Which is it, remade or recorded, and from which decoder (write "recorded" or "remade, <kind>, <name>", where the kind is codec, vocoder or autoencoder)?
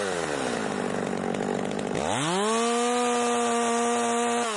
recorded